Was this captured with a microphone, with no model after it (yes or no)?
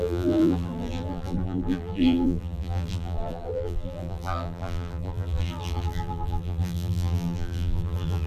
no